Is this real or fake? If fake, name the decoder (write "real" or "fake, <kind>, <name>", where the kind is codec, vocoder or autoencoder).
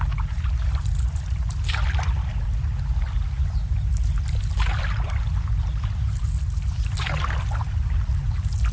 real